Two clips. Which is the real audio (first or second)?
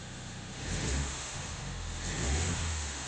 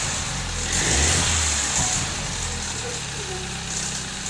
second